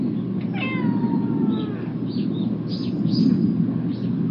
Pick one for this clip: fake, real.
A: real